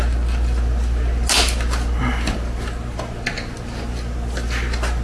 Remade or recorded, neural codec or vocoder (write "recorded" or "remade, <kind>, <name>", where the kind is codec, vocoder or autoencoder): recorded